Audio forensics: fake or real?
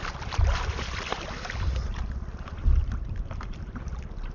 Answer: fake